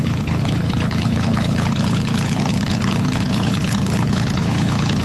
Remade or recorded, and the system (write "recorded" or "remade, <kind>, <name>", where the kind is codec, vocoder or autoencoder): remade, codec, HILCodec